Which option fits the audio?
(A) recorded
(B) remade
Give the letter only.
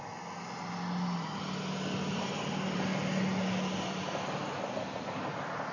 A